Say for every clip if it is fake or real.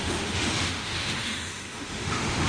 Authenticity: fake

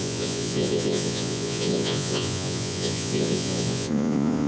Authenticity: fake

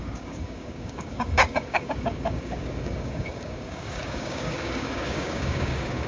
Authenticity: fake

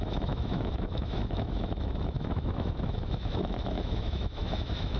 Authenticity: fake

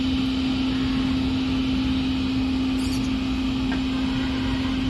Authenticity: real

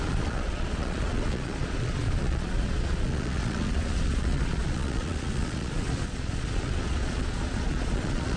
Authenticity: fake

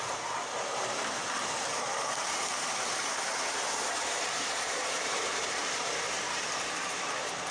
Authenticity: fake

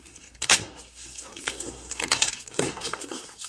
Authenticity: fake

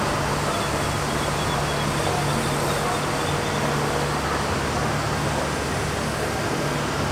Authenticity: real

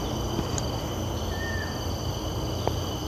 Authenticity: real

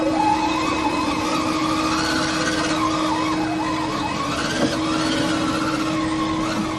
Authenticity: real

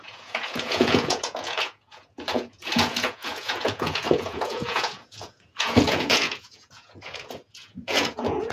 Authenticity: fake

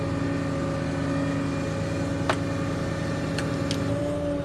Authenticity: real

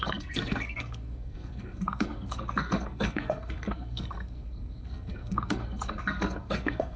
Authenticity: fake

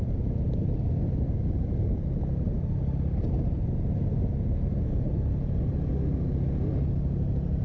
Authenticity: real